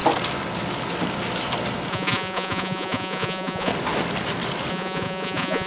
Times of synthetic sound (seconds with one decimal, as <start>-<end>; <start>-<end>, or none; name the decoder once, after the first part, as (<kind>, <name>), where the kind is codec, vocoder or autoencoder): 1.9-3.7 (vocoder, Vocos); 4.7-5.7